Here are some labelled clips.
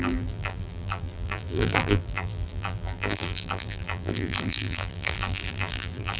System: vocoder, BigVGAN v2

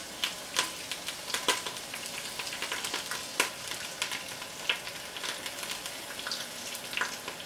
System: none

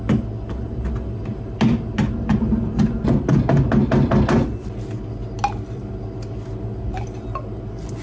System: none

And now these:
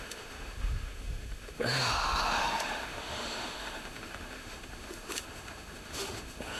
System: autoencoder, DAC-VAE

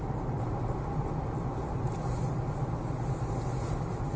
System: none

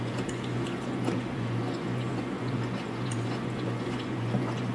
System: vocoder, Vocos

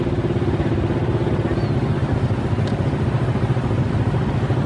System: none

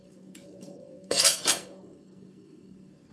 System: codec, SNAC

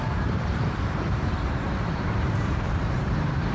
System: vocoder, BigVGAN v2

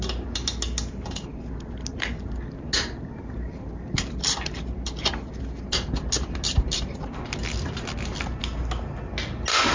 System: none